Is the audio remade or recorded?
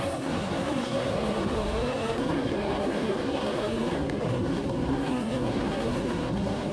remade